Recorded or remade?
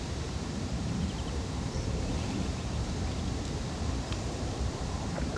remade